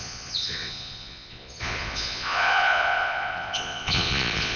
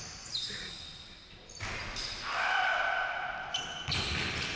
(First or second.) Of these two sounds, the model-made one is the first